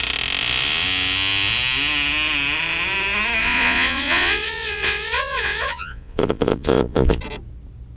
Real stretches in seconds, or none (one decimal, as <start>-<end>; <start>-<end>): 0.0-3.4; 7.2-8.0